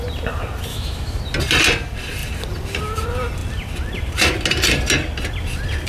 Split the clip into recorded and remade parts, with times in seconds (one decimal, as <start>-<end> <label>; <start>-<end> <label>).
0.0-0.7 recorded; 0.7-1.2 remade; 1.2-5.9 recorded